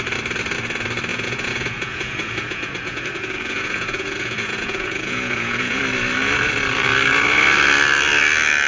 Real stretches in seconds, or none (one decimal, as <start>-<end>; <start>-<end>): 0.0-1.1; 5.8-8.7